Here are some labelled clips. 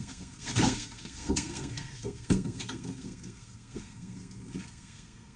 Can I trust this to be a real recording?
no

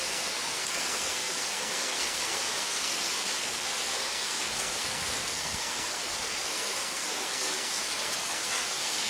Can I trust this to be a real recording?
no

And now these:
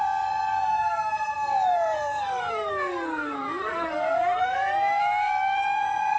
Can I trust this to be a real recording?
no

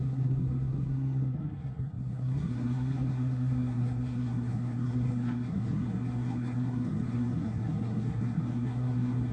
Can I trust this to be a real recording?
no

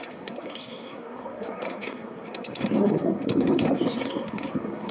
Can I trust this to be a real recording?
no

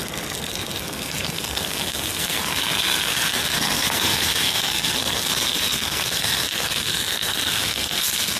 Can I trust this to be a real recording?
no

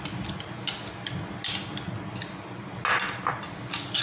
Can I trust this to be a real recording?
yes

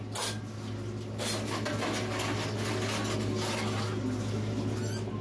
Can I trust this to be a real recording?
yes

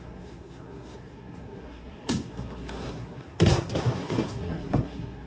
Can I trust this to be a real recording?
no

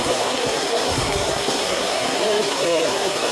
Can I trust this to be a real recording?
no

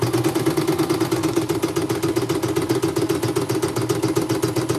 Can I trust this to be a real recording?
yes